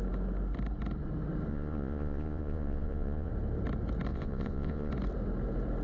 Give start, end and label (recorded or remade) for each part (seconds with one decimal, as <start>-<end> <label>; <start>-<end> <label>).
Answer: 0.0-1.5 recorded; 1.5-3.3 remade; 3.3-4.1 recorded; 4.1-4.9 remade; 4.9-5.8 recorded